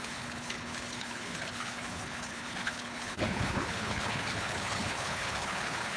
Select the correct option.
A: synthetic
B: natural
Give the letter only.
A